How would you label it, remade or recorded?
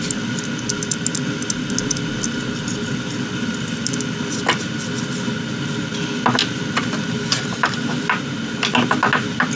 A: recorded